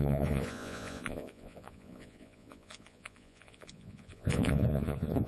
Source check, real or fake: fake